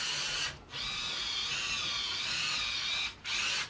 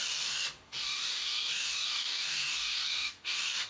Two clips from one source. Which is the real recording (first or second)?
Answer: first